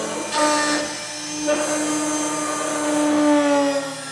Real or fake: real